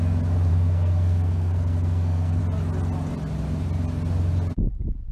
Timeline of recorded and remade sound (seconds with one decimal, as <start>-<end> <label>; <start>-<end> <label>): 0.0-0.5 recorded; 0.5-2.4 remade; 2.4-5.1 recorded